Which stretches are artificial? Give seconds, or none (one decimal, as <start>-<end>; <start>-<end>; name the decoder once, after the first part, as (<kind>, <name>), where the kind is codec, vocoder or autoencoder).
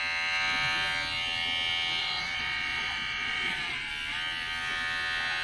2.0-3.9 (vocoder, Vocos)